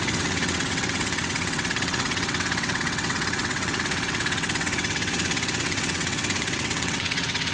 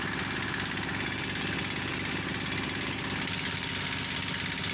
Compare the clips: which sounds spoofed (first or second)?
first